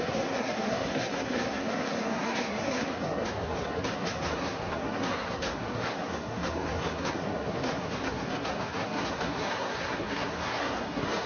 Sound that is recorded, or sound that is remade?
remade